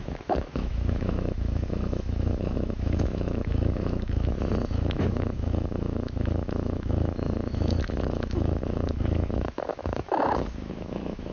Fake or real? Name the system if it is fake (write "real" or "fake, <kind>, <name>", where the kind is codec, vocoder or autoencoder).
fake, autoencoder, DAC-VAE